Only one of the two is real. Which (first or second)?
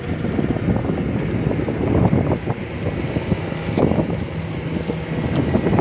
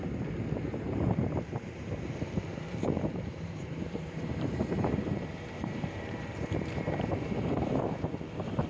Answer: first